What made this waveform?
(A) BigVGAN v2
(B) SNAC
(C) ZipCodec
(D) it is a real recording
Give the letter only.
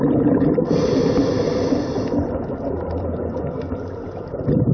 D